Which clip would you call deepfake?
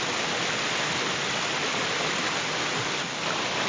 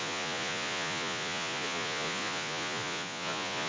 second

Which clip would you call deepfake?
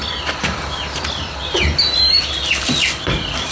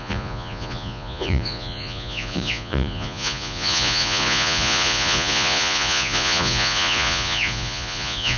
second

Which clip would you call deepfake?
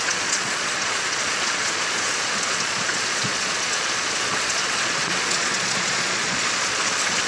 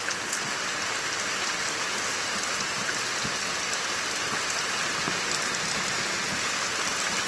first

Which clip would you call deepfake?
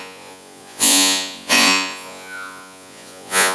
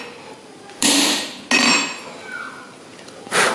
first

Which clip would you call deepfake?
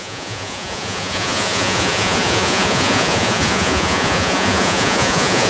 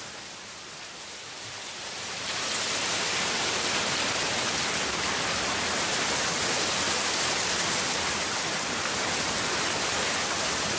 first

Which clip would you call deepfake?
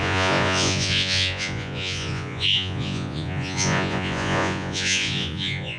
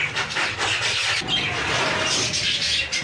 first